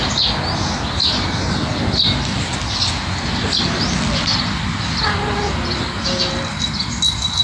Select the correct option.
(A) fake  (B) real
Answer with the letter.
B